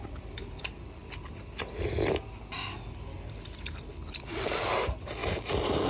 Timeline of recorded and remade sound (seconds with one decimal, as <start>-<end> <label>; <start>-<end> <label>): 0.0-1.0 remade; 1.0-3.7 recorded; 3.7-5.2 remade; 5.2-5.9 recorded

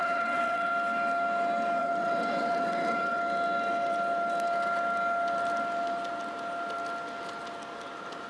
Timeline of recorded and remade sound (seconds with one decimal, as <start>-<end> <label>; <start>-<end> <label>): 0.0-0.7 remade; 0.7-1.8 recorded; 1.8-3.2 remade; 3.2-8.3 recorded

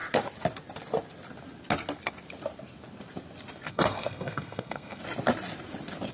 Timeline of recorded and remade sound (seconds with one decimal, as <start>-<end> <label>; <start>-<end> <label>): 0.0-3.7 recorded; 3.7-5.0 remade; 5.0-6.1 recorded

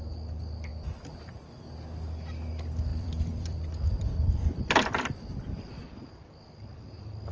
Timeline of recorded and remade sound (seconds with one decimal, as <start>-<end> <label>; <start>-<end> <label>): 0.0-2.9 recorded; 2.9-6.1 remade; 6.1-7.3 recorded

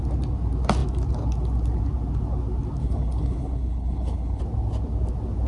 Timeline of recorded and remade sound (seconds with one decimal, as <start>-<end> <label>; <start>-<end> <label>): 0.0-2.8 recorded; 2.8-4.4 remade; 4.4-5.5 recorded

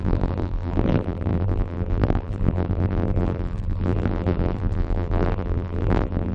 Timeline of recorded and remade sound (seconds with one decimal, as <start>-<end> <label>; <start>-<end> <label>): 0.0-6.3 remade